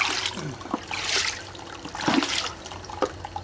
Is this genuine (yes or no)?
yes